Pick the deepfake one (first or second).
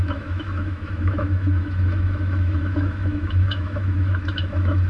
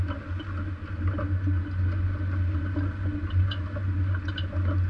first